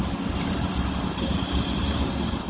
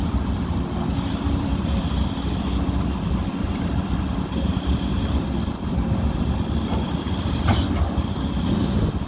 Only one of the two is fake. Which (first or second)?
second